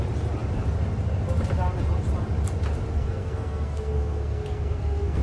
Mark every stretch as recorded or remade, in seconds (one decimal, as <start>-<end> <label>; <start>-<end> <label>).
0.0-2.9 recorded; 2.9-5.2 remade